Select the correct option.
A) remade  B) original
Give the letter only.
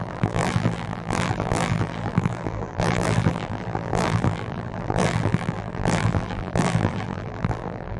A